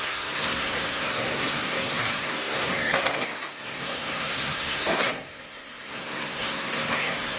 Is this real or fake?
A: fake